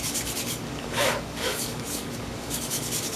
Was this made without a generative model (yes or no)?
no